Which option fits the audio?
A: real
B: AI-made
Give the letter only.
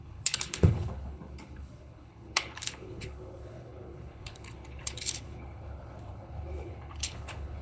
B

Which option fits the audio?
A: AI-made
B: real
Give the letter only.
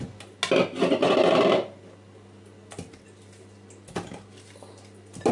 B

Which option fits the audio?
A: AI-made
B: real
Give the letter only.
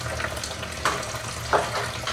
B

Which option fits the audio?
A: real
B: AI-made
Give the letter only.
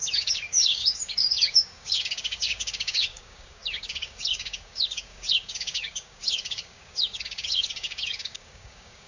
B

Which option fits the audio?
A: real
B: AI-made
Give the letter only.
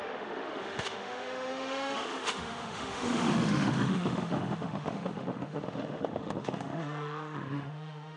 B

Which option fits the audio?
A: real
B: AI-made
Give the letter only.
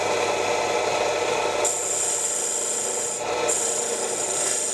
A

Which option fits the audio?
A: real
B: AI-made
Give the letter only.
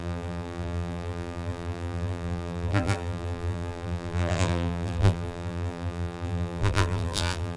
B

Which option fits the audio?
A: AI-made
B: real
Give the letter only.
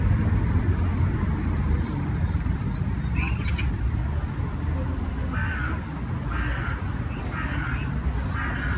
B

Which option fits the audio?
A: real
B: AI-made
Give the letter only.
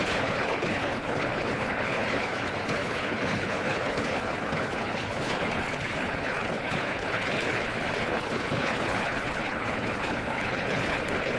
B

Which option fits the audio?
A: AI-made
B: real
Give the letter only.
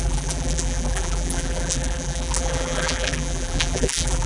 A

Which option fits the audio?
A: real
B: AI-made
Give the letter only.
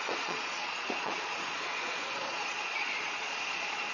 B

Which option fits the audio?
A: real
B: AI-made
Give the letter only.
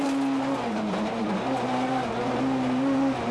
A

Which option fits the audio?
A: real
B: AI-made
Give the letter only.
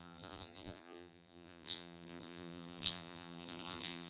B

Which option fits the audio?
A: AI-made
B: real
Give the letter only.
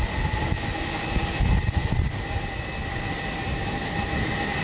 B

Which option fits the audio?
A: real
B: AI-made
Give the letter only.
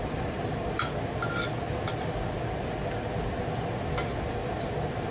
A